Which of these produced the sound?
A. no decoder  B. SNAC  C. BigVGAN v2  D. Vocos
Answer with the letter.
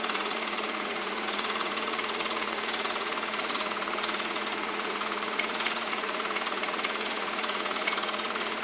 D